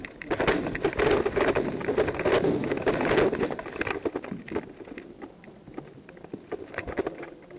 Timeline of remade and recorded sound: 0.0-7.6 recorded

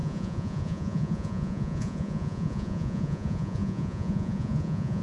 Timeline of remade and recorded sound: 0.0-5.0 remade

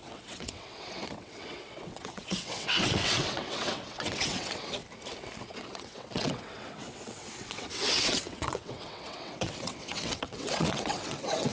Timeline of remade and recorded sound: 0.0-4.8 remade; 4.8-5.4 recorded; 5.4-11.5 remade

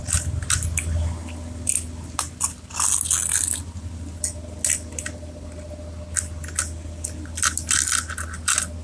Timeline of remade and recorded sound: 0.0-8.8 recorded

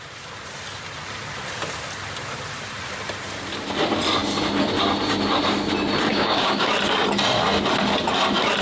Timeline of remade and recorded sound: 0.0-6.1 recorded; 6.1-6.7 remade; 6.7-8.6 recorded

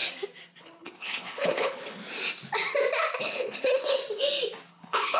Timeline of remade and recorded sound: 0.0-0.6 recorded; 0.6-2.0 remade; 2.0-3.2 recorded; 3.2-4.0 remade; 4.0-4.7 recorded; 4.7-5.2 remade

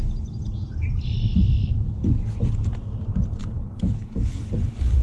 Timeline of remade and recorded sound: 0.0-3.4 recorded; 3.4-4.5 remade; 4.5-5.0 recorded

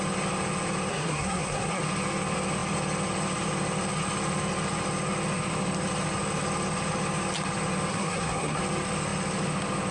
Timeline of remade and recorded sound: 0.0-0.9 recorded; 0.9-1.8 remade; 1.8-7.9 recorded; 7.9-8.6 remade; 8.6-9.9 recorded